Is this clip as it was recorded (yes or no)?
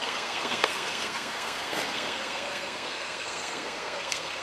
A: no